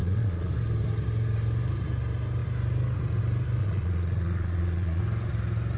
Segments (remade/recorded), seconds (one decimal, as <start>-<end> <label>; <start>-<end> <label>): 0.0-0.5 remade; 0.5-3.6 recorded; 3.6-5.0 remade; 5.0-5.8 recorded